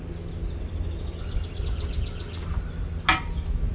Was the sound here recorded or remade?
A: recorded